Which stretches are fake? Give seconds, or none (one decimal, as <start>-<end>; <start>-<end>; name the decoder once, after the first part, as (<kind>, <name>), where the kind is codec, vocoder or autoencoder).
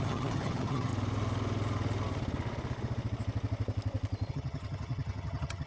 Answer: 0.0-0.9 (vocoder, HiFi-GAN); 4.3-5.7